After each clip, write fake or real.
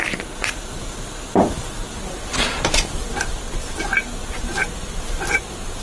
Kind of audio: fake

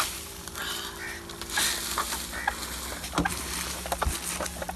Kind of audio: real